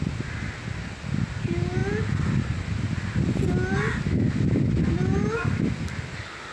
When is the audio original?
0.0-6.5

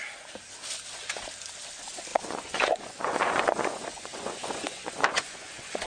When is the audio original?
0.0-2.1